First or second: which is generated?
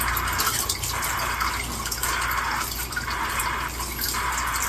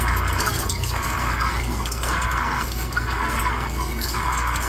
second